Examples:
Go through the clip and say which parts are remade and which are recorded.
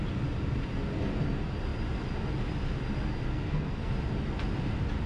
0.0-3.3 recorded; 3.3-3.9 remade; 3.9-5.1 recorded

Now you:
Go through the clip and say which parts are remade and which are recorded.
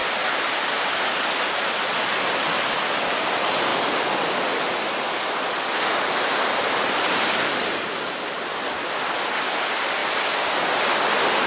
0.0-10.0 recorded; 10.0-10.6 remade; 10.6-11.5 recorded